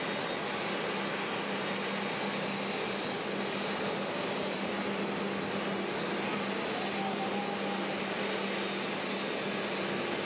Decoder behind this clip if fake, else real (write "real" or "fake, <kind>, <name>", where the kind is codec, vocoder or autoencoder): real